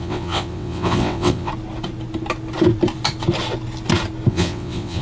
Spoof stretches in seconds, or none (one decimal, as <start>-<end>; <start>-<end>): 0.0-1.5; 4.3-5.0